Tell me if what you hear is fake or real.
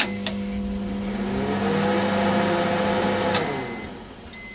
real